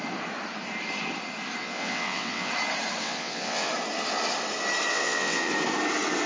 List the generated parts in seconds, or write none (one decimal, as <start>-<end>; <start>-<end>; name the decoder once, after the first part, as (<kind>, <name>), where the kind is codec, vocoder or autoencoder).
1.6-2.5 (vocoder, WaveNeXt); 3.0-3.7; 4.9-5.5